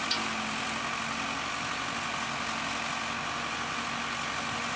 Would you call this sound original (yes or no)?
yes